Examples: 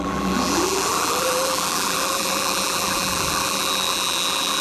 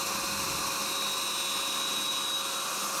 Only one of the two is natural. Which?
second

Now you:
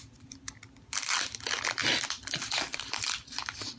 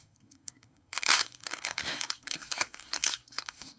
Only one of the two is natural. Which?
first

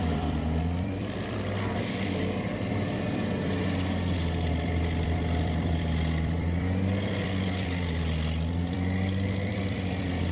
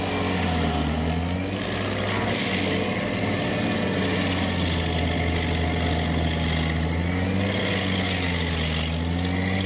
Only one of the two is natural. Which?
second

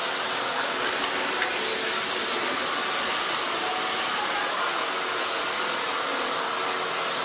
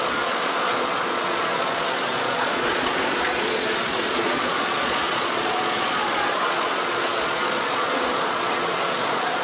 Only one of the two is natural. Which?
first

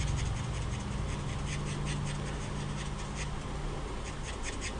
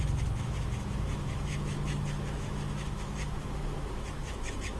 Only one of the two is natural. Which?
first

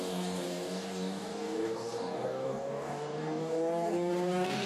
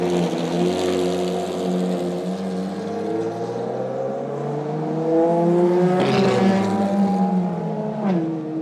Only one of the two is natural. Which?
second